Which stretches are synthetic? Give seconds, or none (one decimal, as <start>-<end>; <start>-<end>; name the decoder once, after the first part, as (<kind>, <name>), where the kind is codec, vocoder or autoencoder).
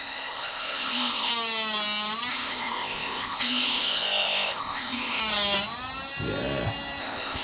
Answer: 0.0-1.3 (codec, ZipCodec); 2.3-5.2; 7.0-7.4